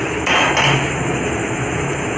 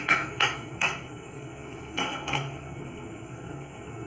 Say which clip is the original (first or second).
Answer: first